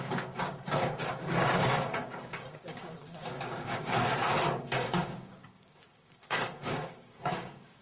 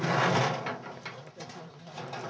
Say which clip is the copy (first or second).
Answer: first